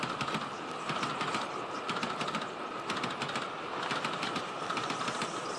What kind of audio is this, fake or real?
real